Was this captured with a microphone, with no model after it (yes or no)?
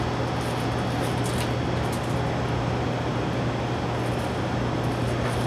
yes